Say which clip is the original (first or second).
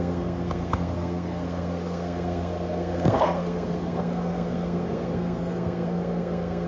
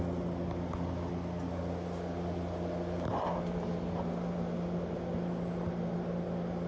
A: second